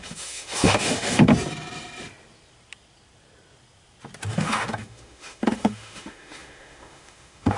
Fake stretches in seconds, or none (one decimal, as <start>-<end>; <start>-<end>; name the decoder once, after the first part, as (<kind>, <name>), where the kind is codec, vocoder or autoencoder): 0.0-1.3 (autoencoder, DAC-VAE); 4.3-7.6